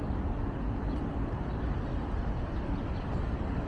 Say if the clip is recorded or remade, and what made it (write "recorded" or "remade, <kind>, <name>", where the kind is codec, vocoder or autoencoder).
recorded